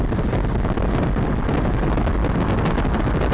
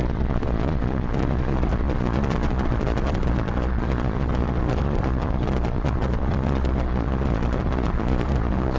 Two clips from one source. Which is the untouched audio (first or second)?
first